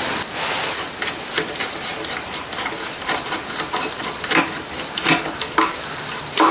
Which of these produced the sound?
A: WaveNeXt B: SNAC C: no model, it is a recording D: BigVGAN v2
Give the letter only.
C